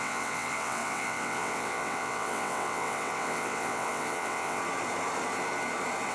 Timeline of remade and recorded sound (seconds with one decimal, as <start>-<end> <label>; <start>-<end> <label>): 0.0-4.6 remade; 4.6-6.1 recorded